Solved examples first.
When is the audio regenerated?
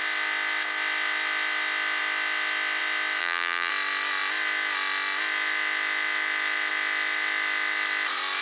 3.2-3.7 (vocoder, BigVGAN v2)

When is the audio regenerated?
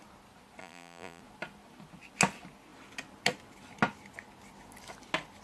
0.6-1.2 (vocoder, BigVGAN v2)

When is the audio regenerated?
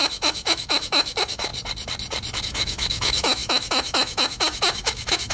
0.0-1.5 (autoencoder, DAC-VAE); 2.4-5.3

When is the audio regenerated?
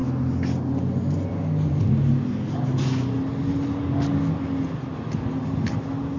none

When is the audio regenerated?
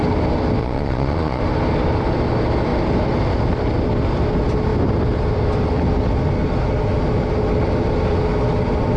0.6-1.4 (vocoder, Vocos)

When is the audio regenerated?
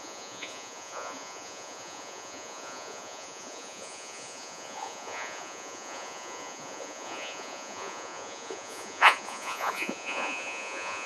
0.0-11.1 (vocoder, Vocos)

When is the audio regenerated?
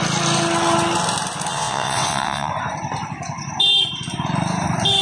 1.5-2.5 (vocoder, WaveNeXt)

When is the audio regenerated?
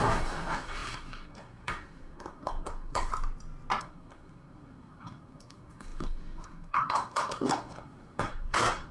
0.0-3.1 (codec, SNAC); 3.8-8.9